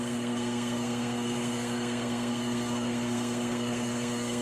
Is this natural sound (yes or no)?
no